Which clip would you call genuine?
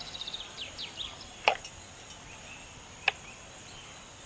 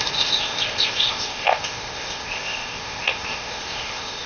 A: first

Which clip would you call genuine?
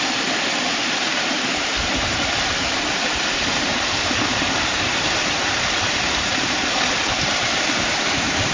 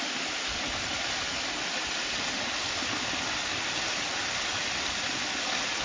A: second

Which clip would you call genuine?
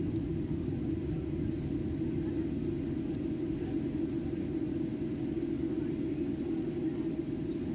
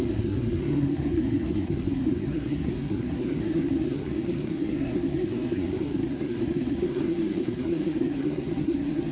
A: first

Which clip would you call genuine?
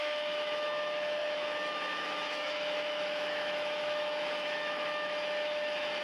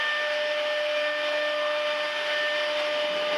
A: second